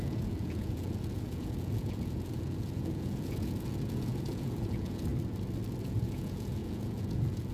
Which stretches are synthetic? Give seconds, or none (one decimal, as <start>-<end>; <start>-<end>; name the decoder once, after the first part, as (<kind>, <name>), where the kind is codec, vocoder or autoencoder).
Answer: 0.0-5.1 (vocoder, Vocos); 5.8-7.5